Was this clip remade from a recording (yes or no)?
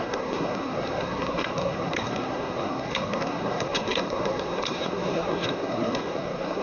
yes